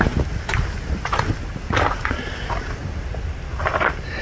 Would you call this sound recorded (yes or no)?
yes